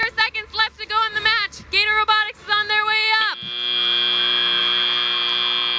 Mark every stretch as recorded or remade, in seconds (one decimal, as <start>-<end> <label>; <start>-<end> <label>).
0.0-5.8 recorded